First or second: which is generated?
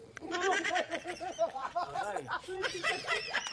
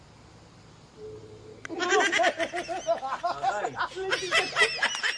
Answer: first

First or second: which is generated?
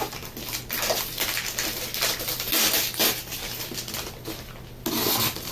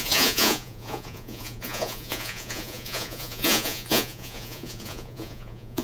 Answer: second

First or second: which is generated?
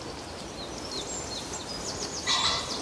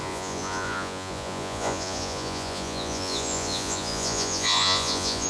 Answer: second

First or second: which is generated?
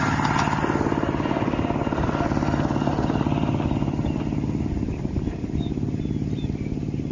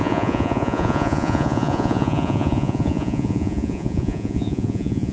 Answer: second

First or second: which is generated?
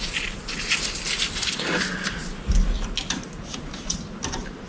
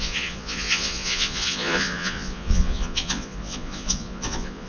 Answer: second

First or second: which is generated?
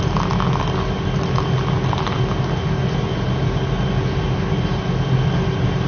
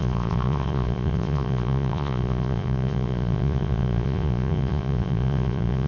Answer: second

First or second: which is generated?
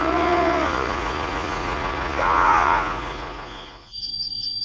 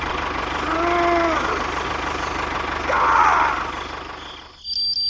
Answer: first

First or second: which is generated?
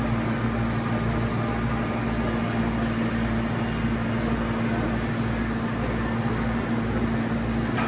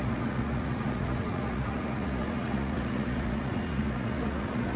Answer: second